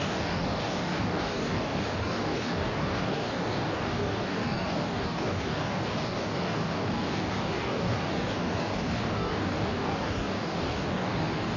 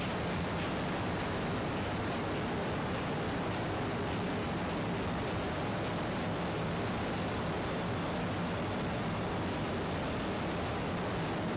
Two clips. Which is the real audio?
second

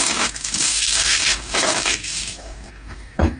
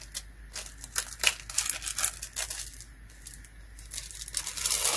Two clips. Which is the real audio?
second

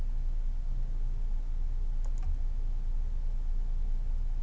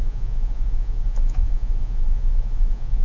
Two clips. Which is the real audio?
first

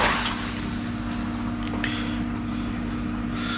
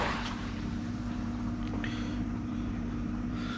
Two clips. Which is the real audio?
first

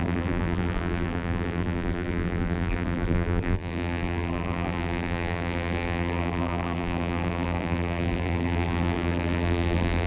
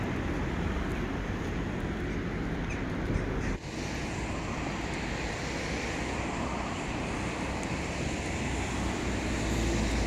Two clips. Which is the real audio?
second